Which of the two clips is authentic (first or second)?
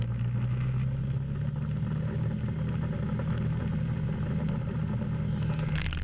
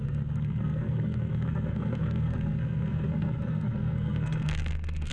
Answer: first